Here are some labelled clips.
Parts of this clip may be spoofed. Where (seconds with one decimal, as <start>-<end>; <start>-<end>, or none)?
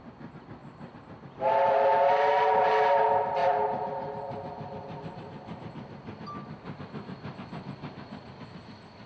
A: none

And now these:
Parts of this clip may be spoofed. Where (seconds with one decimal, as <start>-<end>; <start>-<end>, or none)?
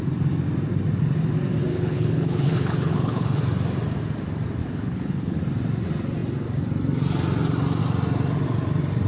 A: 1.7-3.4; 4.6-5.4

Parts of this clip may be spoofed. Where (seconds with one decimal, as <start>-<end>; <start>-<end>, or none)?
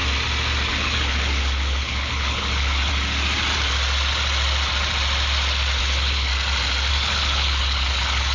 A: 0.7-2.9; 5.8-6.3; 6.9-8.3